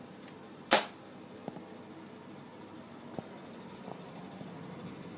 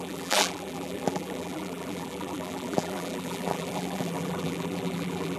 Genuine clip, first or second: first